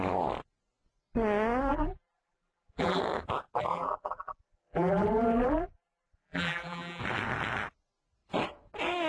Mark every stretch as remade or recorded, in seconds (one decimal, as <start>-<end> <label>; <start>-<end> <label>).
0.0-1.7 recorded; 1.7-3.0 remade; 3.0-3.7 recorded; 3.7-7.0 remade; 7.0-9.1 recorded